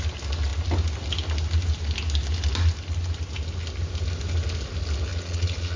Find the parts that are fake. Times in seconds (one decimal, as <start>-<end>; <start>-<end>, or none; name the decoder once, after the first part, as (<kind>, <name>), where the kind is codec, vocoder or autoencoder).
5.1-5.8 (vocoder, Vocos)